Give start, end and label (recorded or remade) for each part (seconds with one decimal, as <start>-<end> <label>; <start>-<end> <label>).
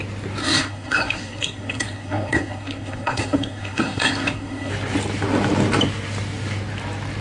0.0-0.4 recorded; 0.4-4.7 remade; 4.7-7.2 recorded